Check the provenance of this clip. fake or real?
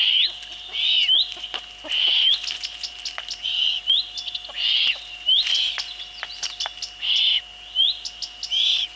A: real